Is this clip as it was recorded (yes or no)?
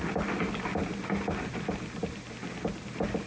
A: yes